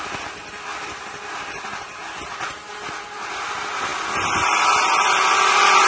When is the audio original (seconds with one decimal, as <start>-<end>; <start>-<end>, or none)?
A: 0.0-0.7; 1.4-5.9